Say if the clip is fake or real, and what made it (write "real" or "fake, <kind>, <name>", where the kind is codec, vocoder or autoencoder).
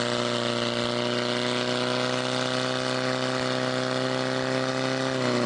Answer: real